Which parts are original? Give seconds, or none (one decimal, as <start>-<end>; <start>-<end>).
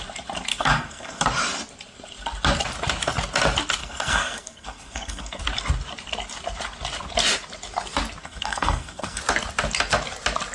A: 0.0-0.5; 1.2-3.8; 5.4-8.2; 9.2-10.5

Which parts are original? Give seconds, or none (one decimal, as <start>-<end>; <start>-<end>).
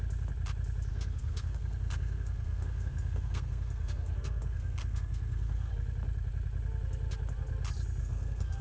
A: 0.0-0.9; 5.7-8.0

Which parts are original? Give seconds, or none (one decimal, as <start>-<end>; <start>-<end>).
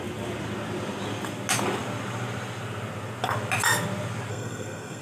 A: 0.0-4.3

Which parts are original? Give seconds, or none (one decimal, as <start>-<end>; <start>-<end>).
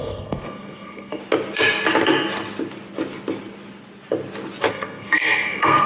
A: 1.2-4.7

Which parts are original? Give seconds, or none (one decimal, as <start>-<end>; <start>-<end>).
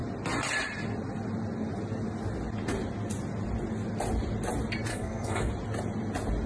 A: 0.0-4.9; 5.5-6.5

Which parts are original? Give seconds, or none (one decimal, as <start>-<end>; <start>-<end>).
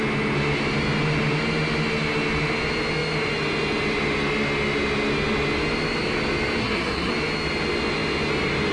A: 0.0-6.6; 7.1-8.7